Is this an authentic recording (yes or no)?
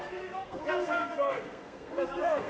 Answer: no